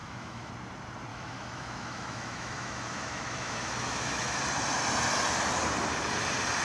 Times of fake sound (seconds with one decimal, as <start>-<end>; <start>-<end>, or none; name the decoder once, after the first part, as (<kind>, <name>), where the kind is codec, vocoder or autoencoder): 0.0-0.5 (autoencoder, DAC-VAE); 1.1-4.4